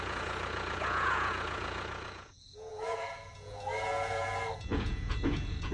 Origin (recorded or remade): remade